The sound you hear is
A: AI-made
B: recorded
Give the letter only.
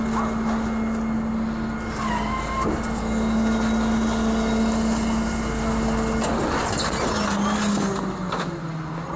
B